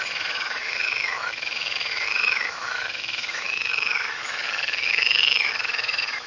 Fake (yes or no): yes